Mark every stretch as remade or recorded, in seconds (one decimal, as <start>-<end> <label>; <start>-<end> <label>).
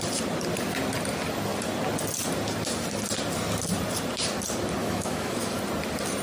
0.0-4.8 recorded; 4.8-5.6 remade; 5.6-6.2 recorded